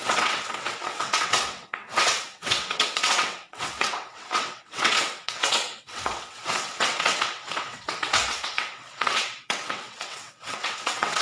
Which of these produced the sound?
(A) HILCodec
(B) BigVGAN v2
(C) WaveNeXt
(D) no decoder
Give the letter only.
C